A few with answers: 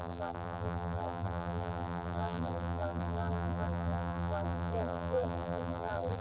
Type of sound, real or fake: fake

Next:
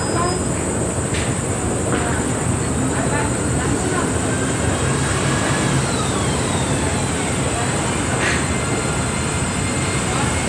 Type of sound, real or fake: real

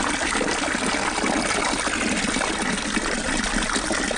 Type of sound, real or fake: real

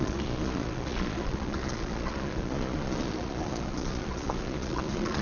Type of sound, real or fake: fake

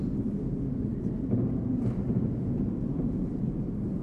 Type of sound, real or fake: real